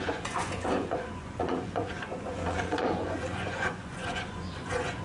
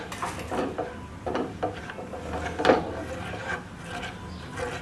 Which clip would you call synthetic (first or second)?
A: first